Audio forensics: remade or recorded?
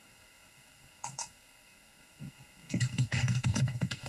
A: remade